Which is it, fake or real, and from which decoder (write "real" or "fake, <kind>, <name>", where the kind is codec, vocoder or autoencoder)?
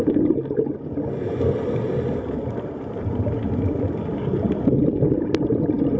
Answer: real